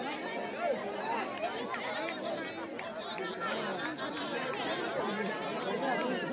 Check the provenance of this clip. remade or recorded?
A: recorded